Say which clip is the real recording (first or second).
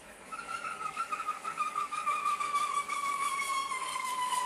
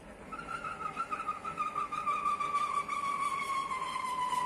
second